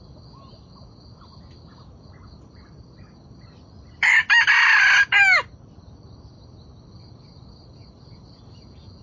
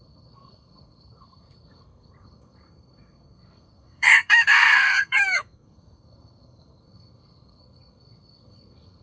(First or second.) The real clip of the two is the first